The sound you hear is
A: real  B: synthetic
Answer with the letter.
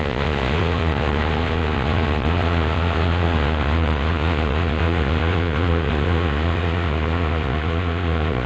B